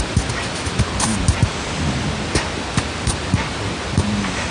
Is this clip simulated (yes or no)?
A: no